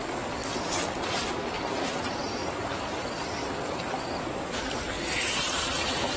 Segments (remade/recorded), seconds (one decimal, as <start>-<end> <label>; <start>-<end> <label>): 0.0-0.4 recorded; 0.4-0.9 remade; 0.9-2.4 recorded; 2.4-4.1 remade; 4.1-6.2 recorded